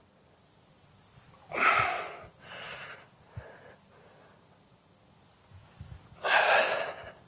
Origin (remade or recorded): recorded